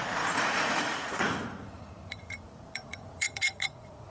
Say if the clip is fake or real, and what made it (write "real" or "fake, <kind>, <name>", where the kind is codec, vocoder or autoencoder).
fake, vocoder, Vocos